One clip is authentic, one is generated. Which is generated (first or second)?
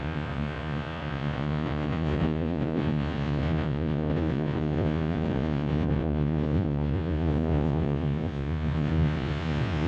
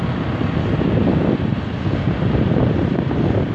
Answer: first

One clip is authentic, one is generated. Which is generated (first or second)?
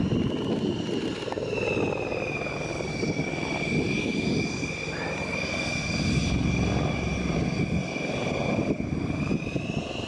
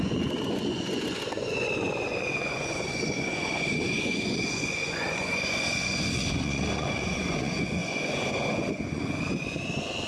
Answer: second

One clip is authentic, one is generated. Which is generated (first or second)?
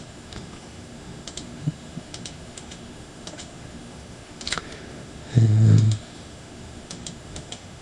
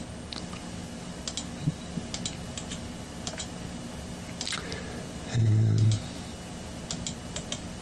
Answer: first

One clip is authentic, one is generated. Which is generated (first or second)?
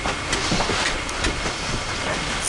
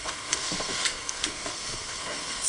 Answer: second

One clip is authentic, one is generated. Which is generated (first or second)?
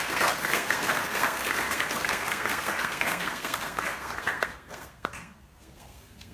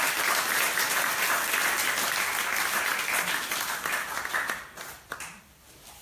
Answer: first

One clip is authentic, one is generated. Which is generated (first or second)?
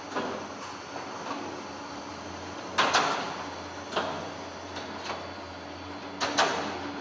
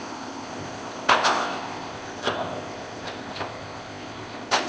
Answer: second